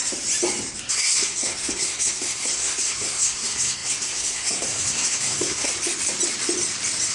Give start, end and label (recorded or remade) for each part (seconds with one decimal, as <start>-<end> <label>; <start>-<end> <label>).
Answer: 0.0-0.9 recorded; 0.9-5.7 remade; 5.7-7.1 recorded